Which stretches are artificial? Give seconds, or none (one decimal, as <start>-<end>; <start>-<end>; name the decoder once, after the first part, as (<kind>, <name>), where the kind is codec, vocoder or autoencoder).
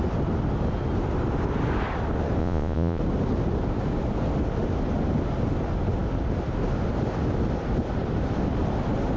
2.4-3.0 (vocoder, Vocos)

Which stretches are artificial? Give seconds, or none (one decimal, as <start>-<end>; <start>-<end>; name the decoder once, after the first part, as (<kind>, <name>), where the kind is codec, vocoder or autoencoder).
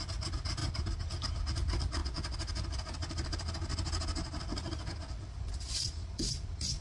none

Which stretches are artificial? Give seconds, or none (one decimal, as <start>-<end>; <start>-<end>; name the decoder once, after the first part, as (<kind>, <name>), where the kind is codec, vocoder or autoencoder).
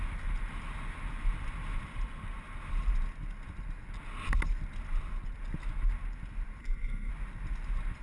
6.6-7.1 (codec, SNAC)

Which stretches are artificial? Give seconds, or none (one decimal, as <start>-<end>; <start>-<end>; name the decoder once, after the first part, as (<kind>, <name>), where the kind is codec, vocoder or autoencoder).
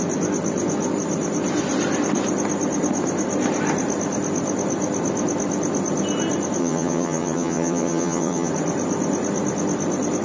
6.6-8.5 (vocoder, HiFi-GAN)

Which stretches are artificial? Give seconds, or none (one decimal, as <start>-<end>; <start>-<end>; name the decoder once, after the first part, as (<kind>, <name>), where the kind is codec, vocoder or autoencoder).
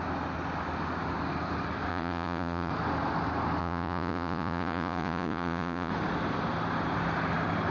1.9-2.7 (vocoder, Vocos); 3.6-5.9